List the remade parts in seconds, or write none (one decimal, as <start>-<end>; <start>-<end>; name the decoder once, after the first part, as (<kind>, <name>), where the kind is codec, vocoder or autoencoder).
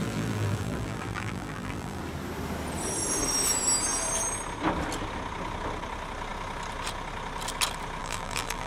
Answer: 0.0-2.0 (vocoder, BigVGAN v2); 8.0-8.7